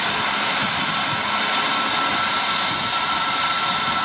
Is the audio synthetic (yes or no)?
yes